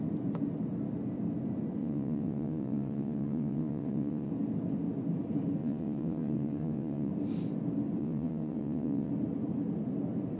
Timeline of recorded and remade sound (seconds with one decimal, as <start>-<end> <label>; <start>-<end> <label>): 0.0-1.8 recorded; 1.8-4.3 remade; 4.3-5.6 recorded; 5.6-7.1 remade; 7.1-8.0 recorded; 8.0-9.1 remade; 9.1-10.4 recorded

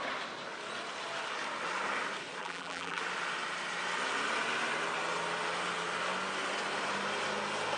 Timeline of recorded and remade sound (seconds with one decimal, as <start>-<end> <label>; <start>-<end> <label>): 0.0-2.4 recorded; 2.4-3.0 remade; 3.0-7.8 recorded

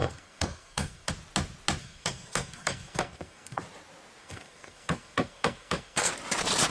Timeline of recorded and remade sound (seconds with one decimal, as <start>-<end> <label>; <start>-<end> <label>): 0.0-1.1 remade; 1.1-1.8 recorded; 1.8-3.6 remade; 3.6-4.2 recorded; 4.2-6.1 remade; 6.1-6.7 recorded

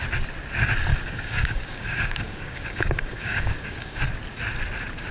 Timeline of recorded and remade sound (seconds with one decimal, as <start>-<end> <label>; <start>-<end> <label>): 0.0-0.9 recorded; 0.9-4.0 remade; 4.0-5.1 recorded

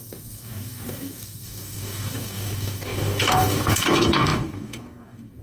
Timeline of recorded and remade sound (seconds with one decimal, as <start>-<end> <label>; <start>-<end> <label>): 0.0-5.4 remade

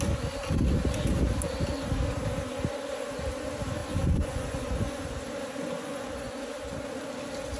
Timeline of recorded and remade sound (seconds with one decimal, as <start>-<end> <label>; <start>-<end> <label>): 0.0-3.8 recorded; 3.8-5.0 remade; 5.0-5.8 recorded; 5.8-6.4 remade; 6.4-7.6 recorded

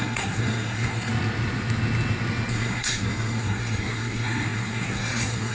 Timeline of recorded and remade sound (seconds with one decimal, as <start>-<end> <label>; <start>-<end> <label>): 0.0-1.1 remade; 1.1-2.5 recorded; 2.5-5.5 remade

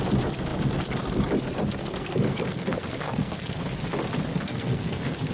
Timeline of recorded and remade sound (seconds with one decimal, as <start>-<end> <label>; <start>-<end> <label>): 0.0-1.8 recorded; 1.8-3.6 remade; 3.6-4.3 recorded; 4.3-5.3 remade